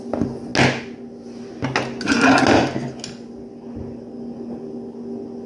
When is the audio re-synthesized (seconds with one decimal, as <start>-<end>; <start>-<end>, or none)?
none